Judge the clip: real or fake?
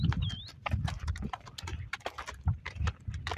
real